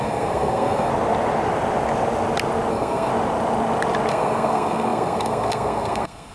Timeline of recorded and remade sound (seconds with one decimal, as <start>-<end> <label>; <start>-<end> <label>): 0.0-0.9 remade; 0.9-2.7 recorded; 2.7-3.1 remade; 3.1-4.1 recorded; 4.1-6.3 remade